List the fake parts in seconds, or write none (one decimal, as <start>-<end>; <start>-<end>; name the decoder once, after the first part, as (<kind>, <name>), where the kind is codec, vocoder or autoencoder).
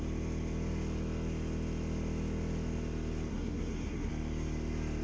3.3-4.1 (codec, SNAC)